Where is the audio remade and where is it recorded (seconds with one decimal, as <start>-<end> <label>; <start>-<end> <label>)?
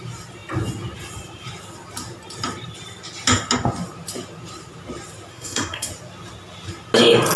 0.0-5.3 recorded; 5.3-5.9 remade; 5.9-7.4 recorded